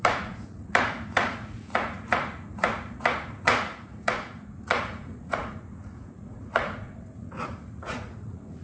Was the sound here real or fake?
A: fake